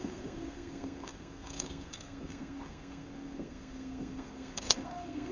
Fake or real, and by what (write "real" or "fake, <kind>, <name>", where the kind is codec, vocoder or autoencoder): fake, codec, SNAC